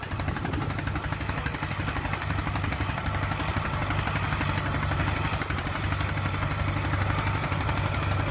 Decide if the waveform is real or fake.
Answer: real